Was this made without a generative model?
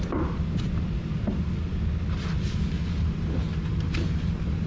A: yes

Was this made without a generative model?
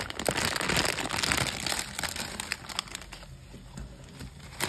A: yes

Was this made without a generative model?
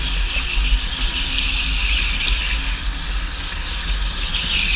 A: yes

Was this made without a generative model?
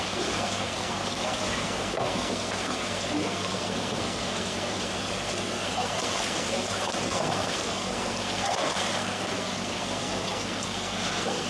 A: no